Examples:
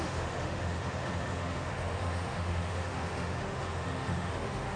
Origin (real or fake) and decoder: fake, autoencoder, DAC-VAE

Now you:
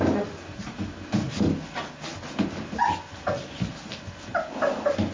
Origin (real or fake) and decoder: real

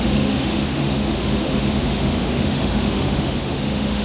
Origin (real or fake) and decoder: fake, autoencoder, DAC-VAE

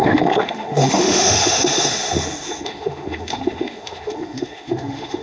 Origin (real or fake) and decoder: fake, autoencoder, DAC-VAE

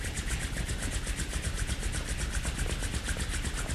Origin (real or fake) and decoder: real